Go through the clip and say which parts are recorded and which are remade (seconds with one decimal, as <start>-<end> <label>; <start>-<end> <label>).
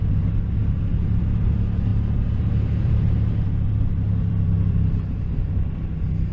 0.0-0.6 recorded; 0.6-1.2 remade; 1.2-1.9 recorded; 1.9-5.7 remade; 5.7-6.3 recorded